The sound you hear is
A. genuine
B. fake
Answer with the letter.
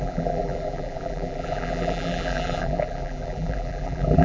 B